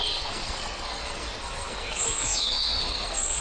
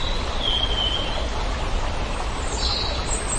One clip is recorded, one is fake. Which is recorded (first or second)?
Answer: second